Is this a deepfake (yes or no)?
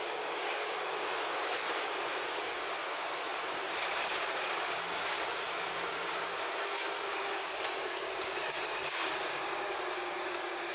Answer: yes